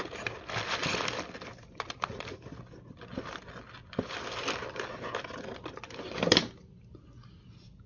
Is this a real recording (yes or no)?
yes